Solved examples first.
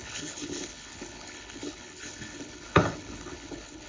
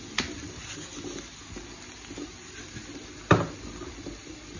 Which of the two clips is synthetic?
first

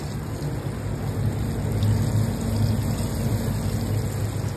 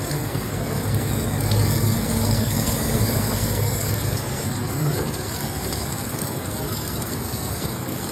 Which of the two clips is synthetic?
second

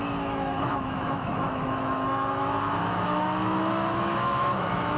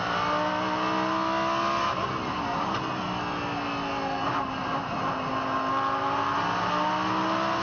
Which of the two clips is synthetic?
first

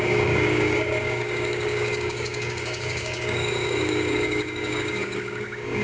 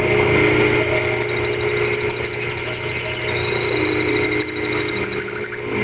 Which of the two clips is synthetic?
first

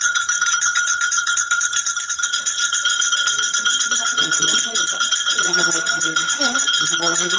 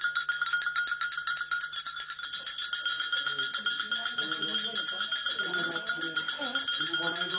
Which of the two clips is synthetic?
first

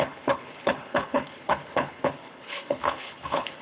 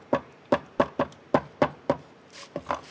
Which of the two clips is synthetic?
first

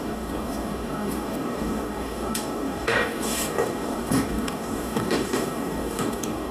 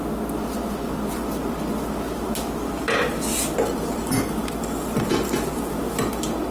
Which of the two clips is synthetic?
first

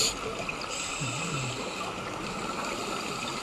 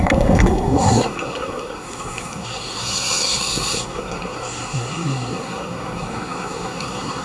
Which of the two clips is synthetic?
second